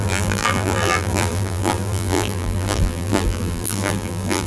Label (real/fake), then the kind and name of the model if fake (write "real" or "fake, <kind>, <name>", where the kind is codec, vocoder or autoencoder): fake, vocoder, BigVGAN v2